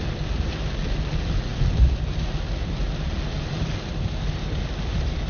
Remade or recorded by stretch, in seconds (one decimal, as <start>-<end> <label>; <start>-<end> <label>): 0.0-5.3 recorded